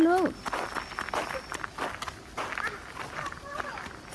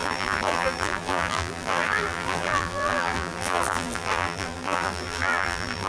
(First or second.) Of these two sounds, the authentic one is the first